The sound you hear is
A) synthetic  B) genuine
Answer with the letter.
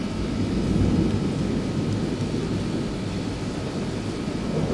B